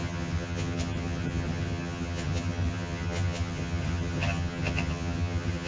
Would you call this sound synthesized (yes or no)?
yes